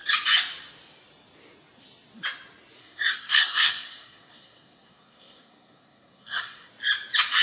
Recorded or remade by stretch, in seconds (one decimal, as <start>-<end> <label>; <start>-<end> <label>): 0.0-2.8 recorded; 2.8-6.7 remade; 6.7-7.4 recorded